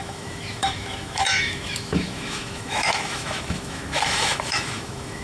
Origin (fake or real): fake